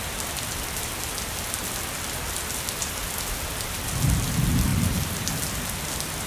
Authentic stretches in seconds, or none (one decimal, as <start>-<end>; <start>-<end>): 0.0-6.3